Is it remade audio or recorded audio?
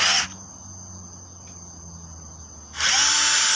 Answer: recorded